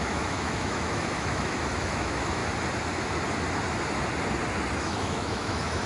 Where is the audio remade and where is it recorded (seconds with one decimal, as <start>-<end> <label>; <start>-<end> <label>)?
0.0-2.4 remade; 2.4-4.7 recorded; 4.7-5.9 remade